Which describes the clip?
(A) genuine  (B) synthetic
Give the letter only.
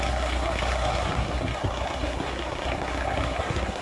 B